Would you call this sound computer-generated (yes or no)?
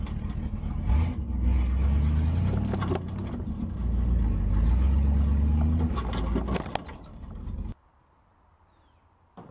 no